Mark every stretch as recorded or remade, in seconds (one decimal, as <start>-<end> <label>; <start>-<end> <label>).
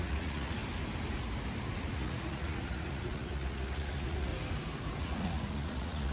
0.0-0.6 remade; 0.6-1.9 recorded; 1.9-4.3 remade; 4.3-5.0 recorded; 5.0-6.1 remade